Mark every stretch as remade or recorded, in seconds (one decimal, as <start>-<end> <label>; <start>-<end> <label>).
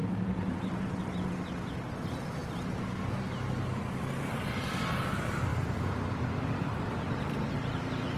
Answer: 0.0-1.3 remade; 1.3-5.5 recorded; 5.5-7.1 remade; 7.1-8.2 recorded